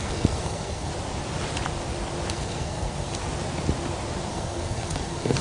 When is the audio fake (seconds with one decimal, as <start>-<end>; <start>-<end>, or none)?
0.0-0.9; 2.3-3.2; 4.3-5.4